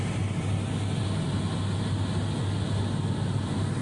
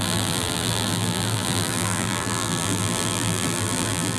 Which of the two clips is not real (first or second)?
second